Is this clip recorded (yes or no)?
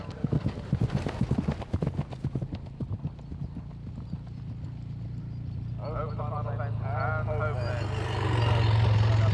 yes